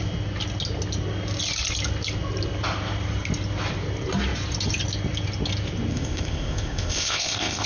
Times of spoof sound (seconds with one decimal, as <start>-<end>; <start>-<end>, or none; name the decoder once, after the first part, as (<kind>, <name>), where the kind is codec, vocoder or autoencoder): 5.9-7.7 (codec, ZipCodec)